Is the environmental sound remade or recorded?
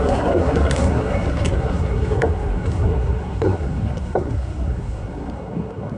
remade